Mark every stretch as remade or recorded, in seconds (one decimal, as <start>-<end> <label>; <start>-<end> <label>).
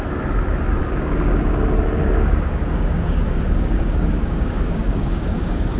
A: 0.0-0.8 recorded; 0.8-1.4 remade; 1.4-2.0 recorded; 2.0-5.8 remade